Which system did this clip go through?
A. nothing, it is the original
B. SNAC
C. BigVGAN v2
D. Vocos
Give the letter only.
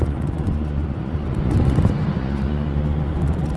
D